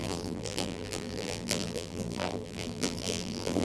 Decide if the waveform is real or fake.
fake